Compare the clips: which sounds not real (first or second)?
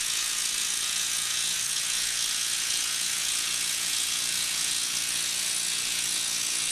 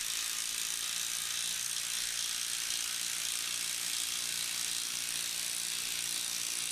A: first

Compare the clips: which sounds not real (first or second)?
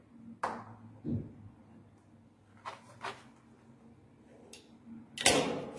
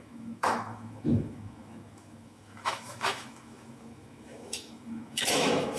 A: second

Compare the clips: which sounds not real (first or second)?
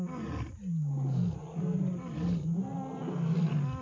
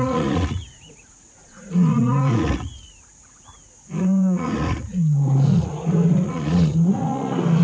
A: second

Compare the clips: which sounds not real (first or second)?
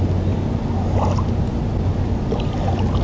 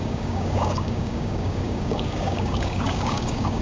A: second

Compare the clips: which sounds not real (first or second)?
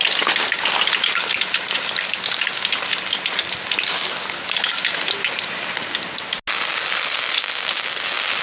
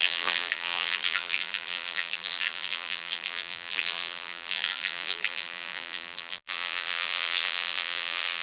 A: second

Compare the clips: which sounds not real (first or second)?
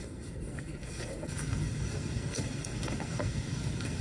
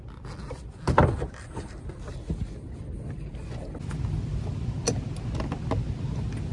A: first